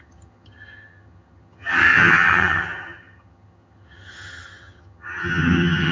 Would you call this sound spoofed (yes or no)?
yes